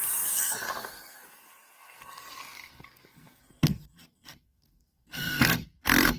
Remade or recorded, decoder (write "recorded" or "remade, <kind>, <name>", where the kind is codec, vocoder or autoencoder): remade, codec, SNAC